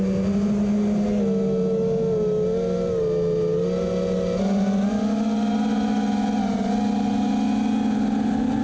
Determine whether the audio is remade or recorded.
recorded